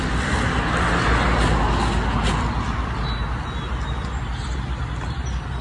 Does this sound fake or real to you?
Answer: real